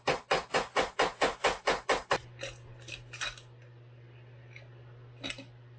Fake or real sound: real